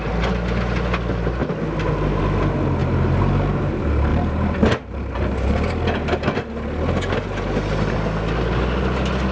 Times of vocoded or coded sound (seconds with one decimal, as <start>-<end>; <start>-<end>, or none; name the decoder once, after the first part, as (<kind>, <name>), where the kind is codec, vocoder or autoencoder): 2.8-3.6 (vocoder, BigVGAN v2); 4.1-5.7